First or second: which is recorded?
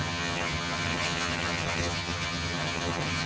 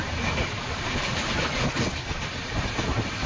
second